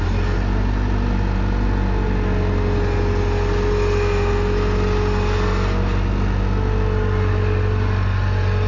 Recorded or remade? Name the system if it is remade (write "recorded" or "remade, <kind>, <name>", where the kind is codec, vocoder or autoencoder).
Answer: recorded